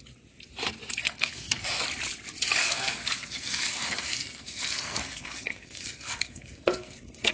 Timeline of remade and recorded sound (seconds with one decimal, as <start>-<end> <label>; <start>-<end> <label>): 0.0-1.0 recorded; 1.0-1.8 remade; 1.8-2.6 recorded; 2.6-7.3 remade